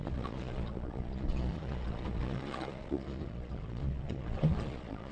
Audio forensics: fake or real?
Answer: fake